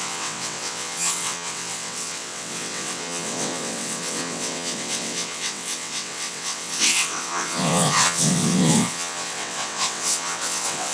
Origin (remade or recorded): remade